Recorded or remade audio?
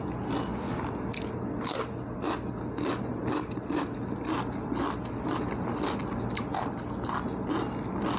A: recorded